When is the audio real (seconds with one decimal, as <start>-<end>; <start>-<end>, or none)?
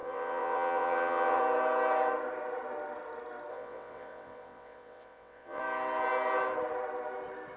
1.4-3.5; 5.6-7.6